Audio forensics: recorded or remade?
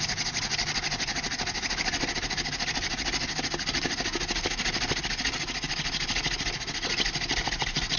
recorded